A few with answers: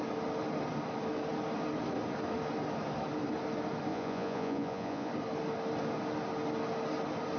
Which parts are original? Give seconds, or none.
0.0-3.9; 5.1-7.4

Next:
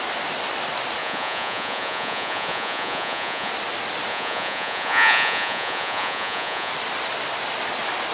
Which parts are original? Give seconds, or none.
0.0-1.0; 3.5-4.1; 6.7-8.1

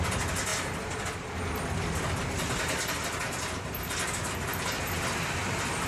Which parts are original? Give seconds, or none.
0.0-5.9

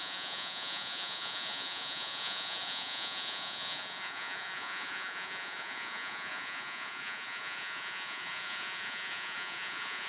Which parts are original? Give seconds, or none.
none

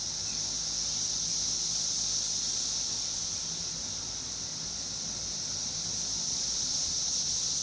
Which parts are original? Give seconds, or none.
0.0-6.3

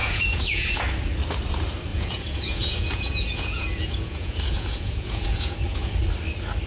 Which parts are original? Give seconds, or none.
0.7-1.9; 5.9-6.7

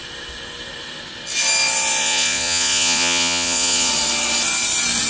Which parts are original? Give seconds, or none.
0.0-2.0; 3.9-5.1

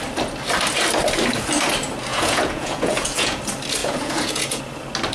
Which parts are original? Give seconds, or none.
0.0-2.1; 3.4-3.8; 4.6-5.1